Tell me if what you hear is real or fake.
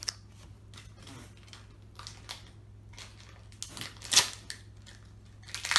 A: real